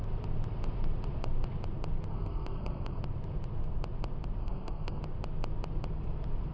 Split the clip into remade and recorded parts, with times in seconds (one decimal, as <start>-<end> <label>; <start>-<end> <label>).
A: 0.0-2.1 recorded; 2.1-3.0 remade; 3.0-4.4 recorded; 4.4-5.0 remade; 5.0-6.5 recorded